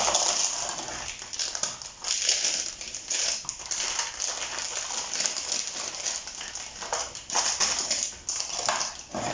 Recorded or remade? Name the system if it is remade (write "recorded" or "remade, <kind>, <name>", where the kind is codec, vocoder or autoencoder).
recorded